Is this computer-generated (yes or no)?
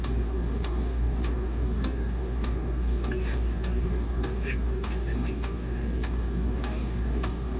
yes